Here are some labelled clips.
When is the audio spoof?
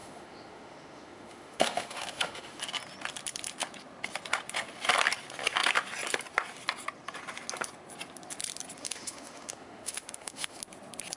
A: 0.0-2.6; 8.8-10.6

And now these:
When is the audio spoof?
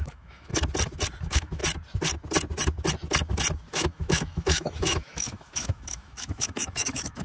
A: 0.0-0.5; 1.2-1.6; 3.7-7.2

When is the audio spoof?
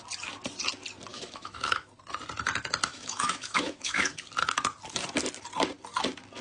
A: 1.1-1.9; 2.9-4.2